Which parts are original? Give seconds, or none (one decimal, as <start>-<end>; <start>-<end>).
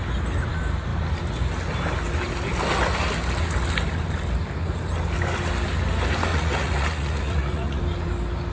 0.0-6.3; 7.8-8.5